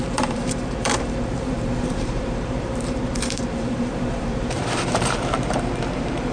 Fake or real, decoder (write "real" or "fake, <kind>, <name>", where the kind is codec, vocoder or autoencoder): fake, vocoder, BigVGAN v2